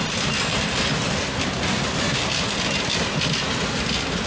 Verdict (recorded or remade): recorded